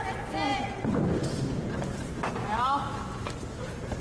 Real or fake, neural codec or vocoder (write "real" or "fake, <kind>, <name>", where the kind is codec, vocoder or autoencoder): real